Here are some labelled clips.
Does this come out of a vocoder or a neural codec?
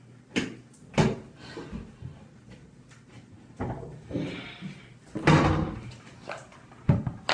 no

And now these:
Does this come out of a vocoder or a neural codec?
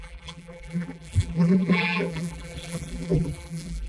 yes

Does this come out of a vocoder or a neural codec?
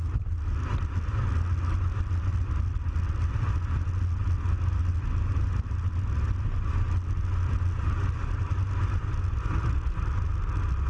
no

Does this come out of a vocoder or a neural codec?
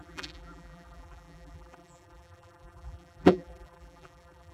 yes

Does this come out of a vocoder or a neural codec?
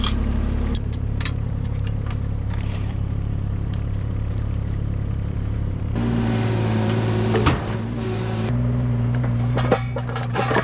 yes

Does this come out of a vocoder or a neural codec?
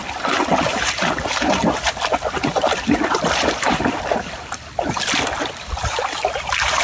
yes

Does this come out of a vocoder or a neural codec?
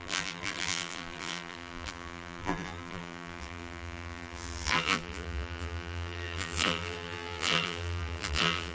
yes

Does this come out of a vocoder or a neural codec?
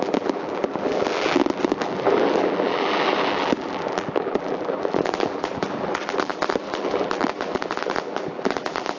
yes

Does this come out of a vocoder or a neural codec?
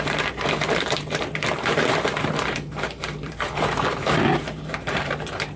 yes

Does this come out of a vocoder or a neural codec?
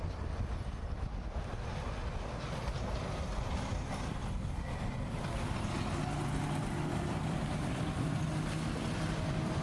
no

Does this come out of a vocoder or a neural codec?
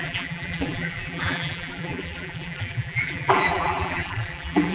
yes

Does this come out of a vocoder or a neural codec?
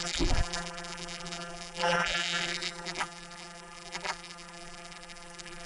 yes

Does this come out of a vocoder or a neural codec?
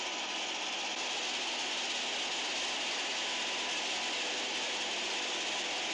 no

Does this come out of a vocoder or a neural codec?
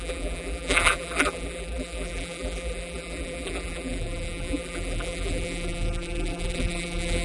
yes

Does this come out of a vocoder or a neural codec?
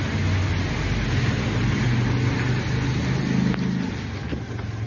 no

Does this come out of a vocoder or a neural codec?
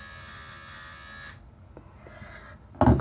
no